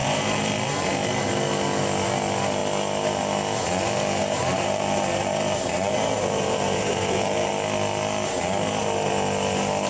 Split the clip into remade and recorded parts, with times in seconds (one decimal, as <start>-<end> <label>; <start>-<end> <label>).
0.0-0.5 remade; 0.5-4.2 recorded; 4.2-7.5 remade; 7.5-9.9 recorded